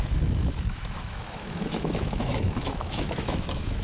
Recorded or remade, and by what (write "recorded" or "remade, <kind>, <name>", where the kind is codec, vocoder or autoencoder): remade, autoencoder, DAC-VAE